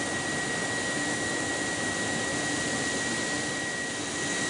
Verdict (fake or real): real